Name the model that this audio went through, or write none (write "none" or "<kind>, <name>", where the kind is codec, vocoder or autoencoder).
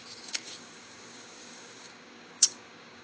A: codec, DAC